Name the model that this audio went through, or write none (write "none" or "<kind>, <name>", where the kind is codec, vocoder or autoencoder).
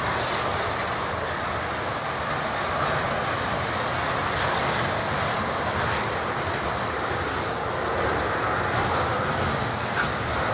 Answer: none